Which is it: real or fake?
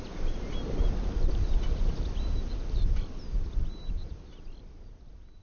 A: real